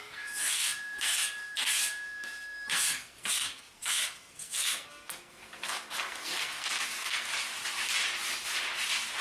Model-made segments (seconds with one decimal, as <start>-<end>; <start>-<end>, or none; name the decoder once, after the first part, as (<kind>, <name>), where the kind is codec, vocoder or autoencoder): 0.0-7.3 (codec, SNAC)

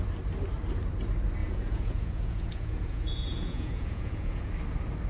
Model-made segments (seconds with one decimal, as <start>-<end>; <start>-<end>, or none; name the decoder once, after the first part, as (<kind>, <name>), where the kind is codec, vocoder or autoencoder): 1.4-4.5 (vocoder, Vocos)

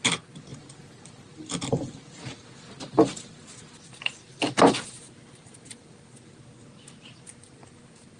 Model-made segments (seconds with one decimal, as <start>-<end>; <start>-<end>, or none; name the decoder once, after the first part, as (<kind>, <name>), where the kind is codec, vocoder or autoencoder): none

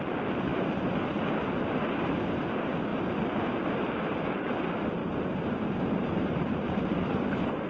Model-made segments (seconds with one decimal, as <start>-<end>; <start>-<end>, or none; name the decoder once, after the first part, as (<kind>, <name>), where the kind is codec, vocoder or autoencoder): 5.0-7.2 (vocoder, BigVGAN v2)

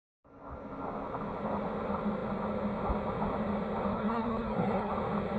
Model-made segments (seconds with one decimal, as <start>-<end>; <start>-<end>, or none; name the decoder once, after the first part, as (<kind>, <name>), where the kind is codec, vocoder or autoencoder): 3.9-4.9 (codec, SNAC)

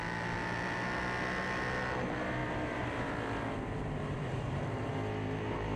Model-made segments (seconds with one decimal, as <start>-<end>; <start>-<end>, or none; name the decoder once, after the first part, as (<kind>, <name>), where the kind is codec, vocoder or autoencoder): 2.4-4.9 (vocoder, BigVGAN v2)